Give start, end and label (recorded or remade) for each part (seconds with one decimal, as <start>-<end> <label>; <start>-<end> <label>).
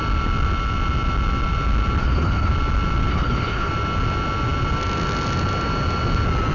0.0-2.0 recorded; 2.0-2.5 remade; 2.5-3.1 recorded; 3.1-3.7 remade; 3.7-6.5 recorded